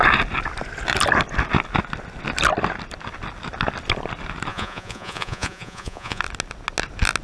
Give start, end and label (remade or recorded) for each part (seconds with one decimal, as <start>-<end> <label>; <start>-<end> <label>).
0.0-4.5 recorded; 4.5-6.2 remade; 6.2-7.2 recorded